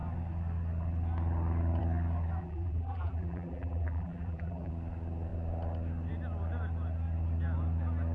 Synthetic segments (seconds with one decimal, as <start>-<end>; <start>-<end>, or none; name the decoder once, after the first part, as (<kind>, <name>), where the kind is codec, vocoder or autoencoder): 2.4-4.7 (vocoder, BigVGAN v2)